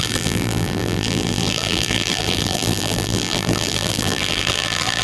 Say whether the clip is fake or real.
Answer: fake